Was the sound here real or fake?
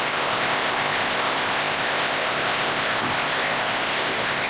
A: fake